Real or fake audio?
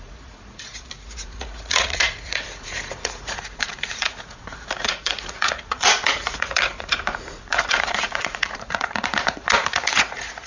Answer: fake